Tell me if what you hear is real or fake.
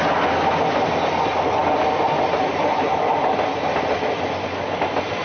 real